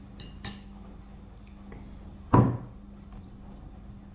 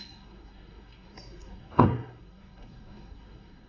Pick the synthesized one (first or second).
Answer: second